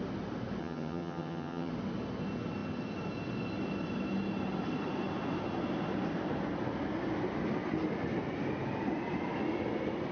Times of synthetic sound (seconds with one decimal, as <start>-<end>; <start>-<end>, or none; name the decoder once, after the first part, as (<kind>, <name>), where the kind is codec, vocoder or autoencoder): 0.6-1.7 (vocoder, HiFi-GAN)